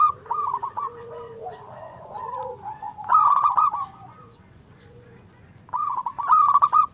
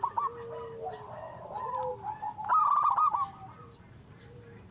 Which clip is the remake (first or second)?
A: first